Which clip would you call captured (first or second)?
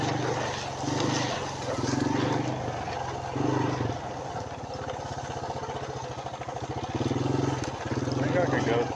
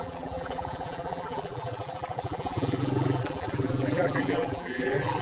first